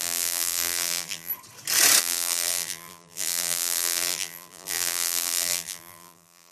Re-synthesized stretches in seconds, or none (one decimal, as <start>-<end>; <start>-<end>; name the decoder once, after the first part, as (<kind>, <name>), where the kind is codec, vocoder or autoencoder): 0.0-1.3 (vocoder, BigVGAN v2); 2.0-6.5